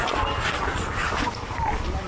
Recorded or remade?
recorded